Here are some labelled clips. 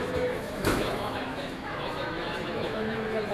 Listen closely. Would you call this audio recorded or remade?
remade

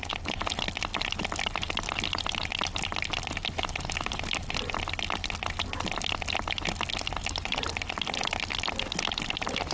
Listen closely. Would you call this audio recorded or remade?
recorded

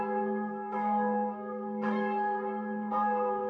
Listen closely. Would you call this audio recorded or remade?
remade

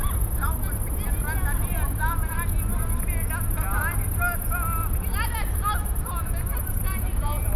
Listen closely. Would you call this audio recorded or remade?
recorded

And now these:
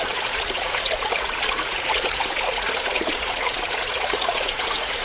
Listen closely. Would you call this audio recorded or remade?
remade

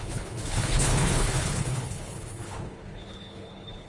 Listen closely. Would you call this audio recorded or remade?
remade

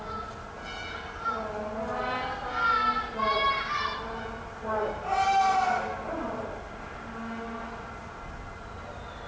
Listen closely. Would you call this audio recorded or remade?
recorded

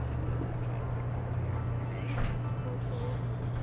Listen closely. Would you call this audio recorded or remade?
recorded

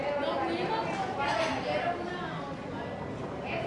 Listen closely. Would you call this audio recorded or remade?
recorded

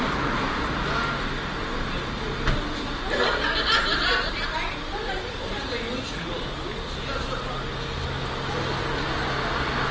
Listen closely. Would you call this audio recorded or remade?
recorded